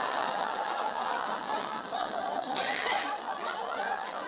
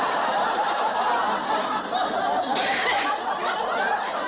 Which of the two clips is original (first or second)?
second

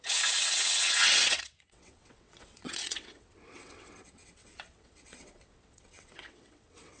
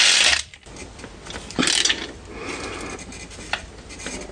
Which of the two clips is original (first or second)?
second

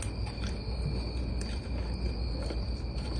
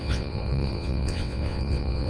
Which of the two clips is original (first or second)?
first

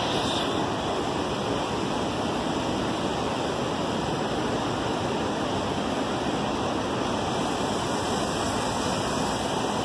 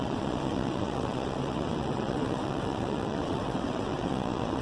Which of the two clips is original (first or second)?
first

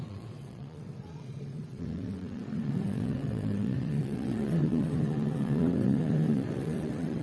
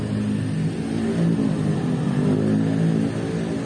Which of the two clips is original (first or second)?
second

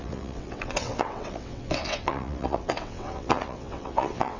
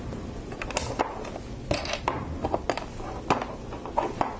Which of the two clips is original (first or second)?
second